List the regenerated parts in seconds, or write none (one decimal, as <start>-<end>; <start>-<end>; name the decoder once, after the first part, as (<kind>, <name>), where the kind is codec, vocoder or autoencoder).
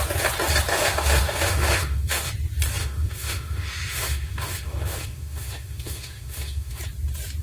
0.7-2.3 (autoencoder, DAC-VAE); 2.8-6.8